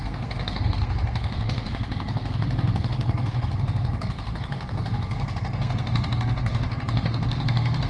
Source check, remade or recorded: remade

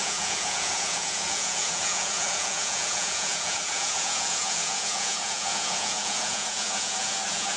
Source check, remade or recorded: remade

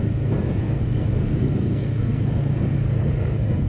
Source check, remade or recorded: remade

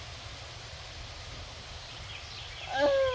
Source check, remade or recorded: recorded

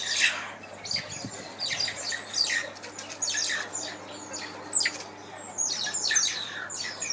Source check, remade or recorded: recorded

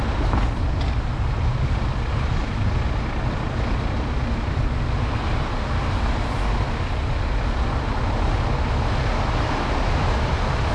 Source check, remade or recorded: recorded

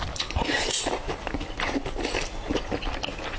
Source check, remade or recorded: recorded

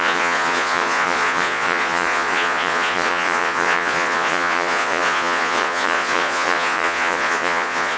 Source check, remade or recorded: remade